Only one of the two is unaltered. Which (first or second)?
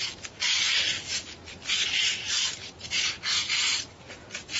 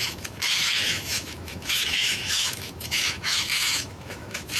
first